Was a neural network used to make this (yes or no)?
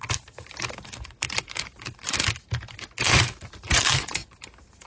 yes